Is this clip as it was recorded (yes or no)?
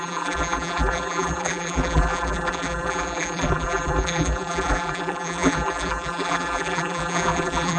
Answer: no